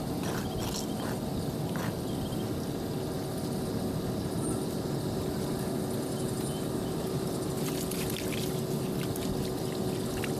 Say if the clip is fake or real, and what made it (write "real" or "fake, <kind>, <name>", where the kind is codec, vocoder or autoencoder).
real